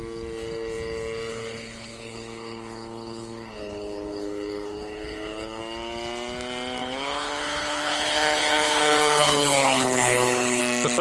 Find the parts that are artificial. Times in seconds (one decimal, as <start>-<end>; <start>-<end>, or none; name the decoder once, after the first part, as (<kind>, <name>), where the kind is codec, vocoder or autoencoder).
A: 1.3-5.6 (codec, HILCodec); 6.8-10.6